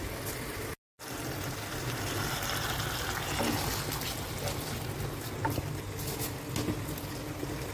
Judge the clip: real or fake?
real